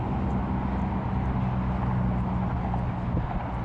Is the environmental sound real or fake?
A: real